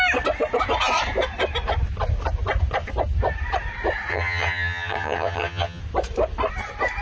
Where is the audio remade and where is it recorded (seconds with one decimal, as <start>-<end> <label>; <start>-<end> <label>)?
0.0-4.1 recorded; 4.1-5.8 remade; 5.8-7.0 recorded